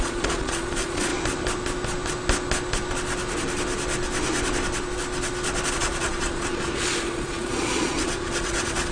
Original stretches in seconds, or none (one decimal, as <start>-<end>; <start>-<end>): 1.1-5.7